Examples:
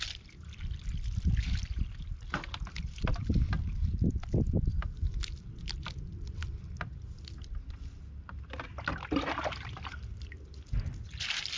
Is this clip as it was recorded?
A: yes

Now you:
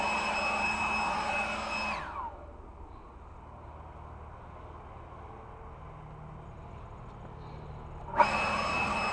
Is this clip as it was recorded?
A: yes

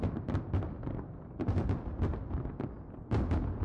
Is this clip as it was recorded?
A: yes